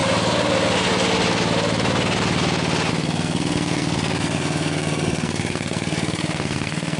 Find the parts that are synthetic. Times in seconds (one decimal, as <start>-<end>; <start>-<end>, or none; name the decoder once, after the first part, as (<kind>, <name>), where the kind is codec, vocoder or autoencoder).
2.9-7.0 (codec, SNAC)

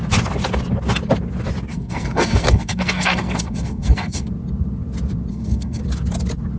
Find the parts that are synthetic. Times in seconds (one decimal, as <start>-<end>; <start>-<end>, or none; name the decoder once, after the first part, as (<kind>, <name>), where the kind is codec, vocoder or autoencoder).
1.7-4.3 (codec, SNAC); 5.3-5.8

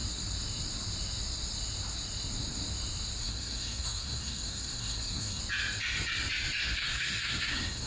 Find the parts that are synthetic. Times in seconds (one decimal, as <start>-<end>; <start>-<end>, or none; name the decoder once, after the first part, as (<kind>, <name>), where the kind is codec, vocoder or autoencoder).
3.2-5.4 (codec, SNAC); 6.6-7.9

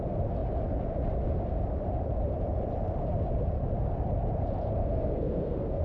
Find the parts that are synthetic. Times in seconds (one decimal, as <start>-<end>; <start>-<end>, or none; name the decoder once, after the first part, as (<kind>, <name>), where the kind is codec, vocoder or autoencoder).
4.8-5.8 (codec, SNAC)

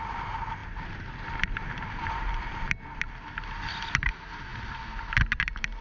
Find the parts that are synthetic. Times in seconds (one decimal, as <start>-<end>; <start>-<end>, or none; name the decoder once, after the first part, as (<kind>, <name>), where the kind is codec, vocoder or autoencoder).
none